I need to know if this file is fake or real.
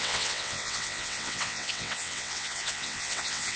fake